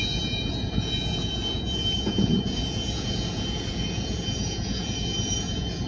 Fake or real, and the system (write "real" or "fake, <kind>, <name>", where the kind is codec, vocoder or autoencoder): fake, vocoder, Vocos